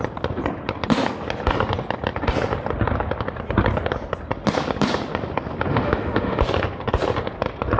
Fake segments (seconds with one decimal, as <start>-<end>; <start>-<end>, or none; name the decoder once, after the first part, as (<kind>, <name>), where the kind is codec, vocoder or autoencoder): 5.7-6.4 (autoencoder, DAC-VAE)

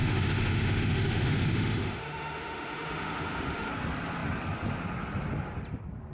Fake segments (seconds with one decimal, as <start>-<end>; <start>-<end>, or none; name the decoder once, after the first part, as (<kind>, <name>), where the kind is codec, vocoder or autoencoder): 0.0-3.7 (autoencoder, DAC-VAE)

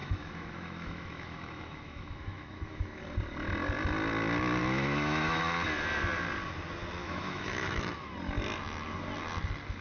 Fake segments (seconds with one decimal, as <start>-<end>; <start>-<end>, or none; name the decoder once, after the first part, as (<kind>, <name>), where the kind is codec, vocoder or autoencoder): 0.0-3.0 (autoencoder, DAC-VAE); 4.6-5.4; 7.0-7.8

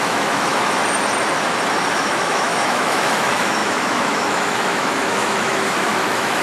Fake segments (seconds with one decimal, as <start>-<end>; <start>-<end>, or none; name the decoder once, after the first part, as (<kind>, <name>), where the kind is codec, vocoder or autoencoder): 0.0-0.8 (autoencoder, DAC-VAE); 1.9-6.4

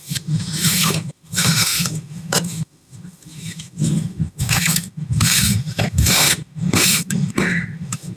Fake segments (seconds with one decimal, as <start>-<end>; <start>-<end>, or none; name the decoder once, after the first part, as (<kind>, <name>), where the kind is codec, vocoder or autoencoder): 0.0-8.2 (autoencoder, DAC-VAE)

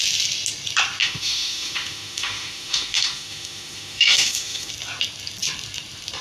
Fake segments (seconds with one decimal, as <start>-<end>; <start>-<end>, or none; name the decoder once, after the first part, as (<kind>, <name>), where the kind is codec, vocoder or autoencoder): 1.0-4.7 (autoencoder, DAC-VAE)